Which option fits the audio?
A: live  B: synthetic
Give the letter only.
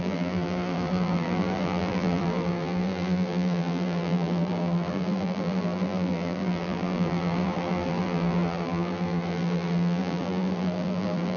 B